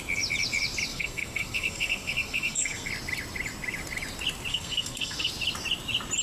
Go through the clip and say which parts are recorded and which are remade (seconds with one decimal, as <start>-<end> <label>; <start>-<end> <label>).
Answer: 0.0-0.9 recorded; 0.9-2.9 remade; 2.9-4.5 recorded; 4.5-5.3 remade; 5.3-6.2 recorded